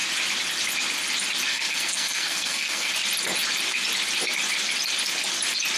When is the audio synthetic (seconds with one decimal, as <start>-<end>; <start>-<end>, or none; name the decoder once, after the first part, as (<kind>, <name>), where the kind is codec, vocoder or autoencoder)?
1.5-2.9 (codec, SNAC)